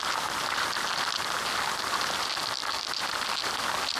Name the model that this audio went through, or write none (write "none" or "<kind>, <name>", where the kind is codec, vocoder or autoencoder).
none